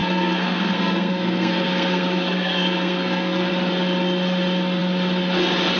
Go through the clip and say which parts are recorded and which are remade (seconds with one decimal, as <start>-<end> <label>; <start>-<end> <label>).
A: 0.0-3.5 remade; 3.5-5.8 recorded